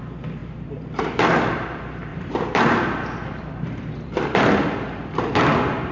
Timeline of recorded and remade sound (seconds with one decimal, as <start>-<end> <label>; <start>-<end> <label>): 0.0-0.4 recorded; 0.4-1.5 remade; 1.5-2.1 recorded; 2.1-5.9 remade